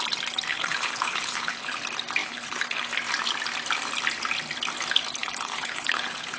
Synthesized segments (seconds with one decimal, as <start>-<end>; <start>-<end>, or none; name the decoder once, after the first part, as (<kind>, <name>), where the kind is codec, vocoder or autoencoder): 0.5-1.7 (codec, HILCodec); 2.2-2.9; 5.2-6.4

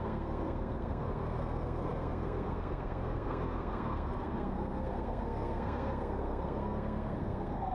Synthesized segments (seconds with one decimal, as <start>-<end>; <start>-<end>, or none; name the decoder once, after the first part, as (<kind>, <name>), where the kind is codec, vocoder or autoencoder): 0.0-7.7 (codec, SNAC)

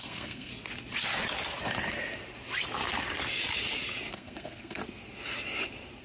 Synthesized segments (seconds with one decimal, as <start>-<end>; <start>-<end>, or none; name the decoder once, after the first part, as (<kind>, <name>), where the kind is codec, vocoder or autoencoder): 0.0-0.5 (codec, SNAC); 4.1-4.8

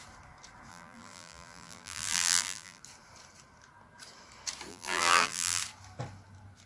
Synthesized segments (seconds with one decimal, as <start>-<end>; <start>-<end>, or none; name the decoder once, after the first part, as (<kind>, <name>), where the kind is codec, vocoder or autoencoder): 0.7-2.8 (vocoder, BigVGAN v2); 4.7-5.6